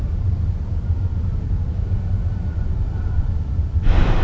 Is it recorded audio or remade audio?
remade